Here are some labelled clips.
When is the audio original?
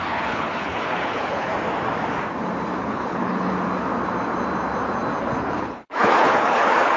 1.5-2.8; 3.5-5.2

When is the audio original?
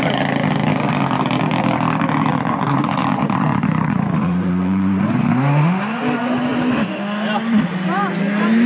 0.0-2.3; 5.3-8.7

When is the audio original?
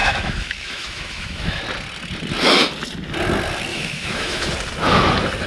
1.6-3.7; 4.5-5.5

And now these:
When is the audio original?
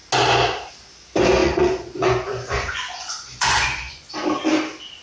0.0-1.4; 4.1-5.0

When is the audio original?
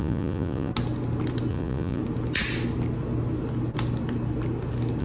0.7-1.5; 2.0-5.0